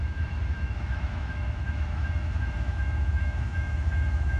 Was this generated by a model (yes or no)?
yes